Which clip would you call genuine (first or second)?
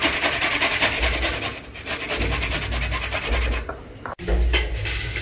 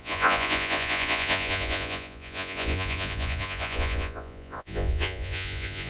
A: first